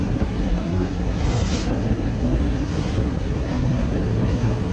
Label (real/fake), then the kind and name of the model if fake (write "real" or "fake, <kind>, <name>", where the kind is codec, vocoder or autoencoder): fake, codec, SNAC